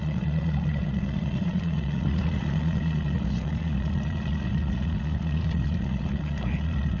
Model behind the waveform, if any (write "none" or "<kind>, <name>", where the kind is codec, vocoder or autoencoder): vocoder, Vocos